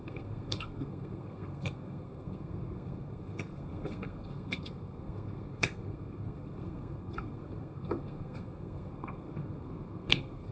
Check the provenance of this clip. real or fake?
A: fake